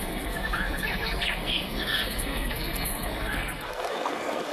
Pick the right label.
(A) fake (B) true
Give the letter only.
A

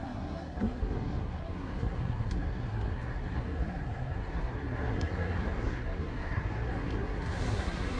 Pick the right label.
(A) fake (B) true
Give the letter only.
A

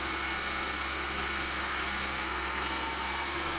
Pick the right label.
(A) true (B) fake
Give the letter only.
B